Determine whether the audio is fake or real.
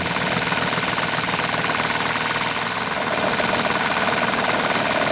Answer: real